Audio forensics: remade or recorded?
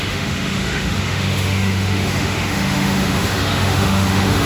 remade